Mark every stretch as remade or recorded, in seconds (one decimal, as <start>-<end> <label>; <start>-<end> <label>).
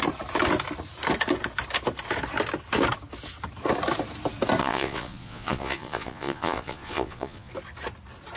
0.0-4.6 recorded; 4.6-7.5 remade; 7.5-8.4 recorded